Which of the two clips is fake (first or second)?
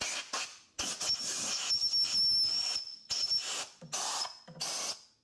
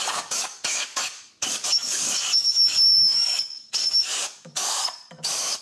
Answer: second